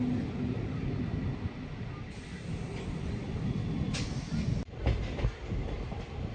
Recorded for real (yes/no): yes